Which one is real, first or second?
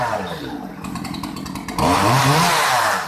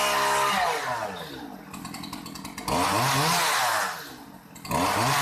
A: second